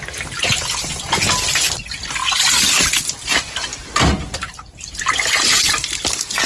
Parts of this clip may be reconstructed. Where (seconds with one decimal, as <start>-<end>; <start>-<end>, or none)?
none